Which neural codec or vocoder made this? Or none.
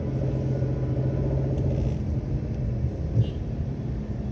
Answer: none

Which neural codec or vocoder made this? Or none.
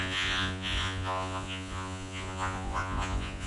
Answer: vocoder, Vocos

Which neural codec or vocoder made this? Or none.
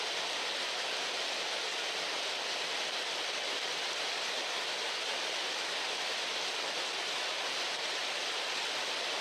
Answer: none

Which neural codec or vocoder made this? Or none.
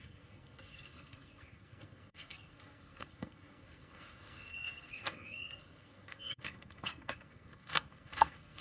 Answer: codec, SNAC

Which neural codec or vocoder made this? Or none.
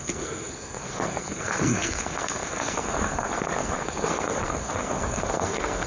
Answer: codec, SNAC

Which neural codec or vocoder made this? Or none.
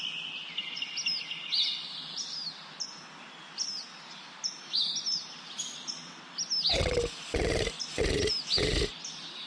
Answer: none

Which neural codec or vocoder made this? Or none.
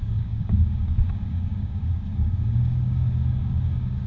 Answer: codec, DAC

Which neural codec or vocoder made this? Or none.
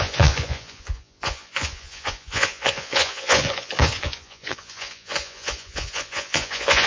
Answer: vocoder, Vocos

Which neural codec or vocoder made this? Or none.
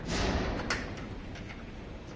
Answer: none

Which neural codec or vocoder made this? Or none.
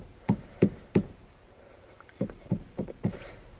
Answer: vocoder, BigVGAN v2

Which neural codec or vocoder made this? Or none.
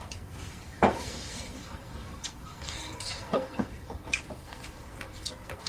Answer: codec, SNAC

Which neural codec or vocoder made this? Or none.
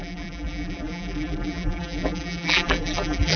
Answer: vocoder, BigVGAN v2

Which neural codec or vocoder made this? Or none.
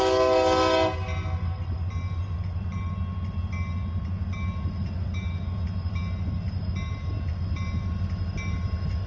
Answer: none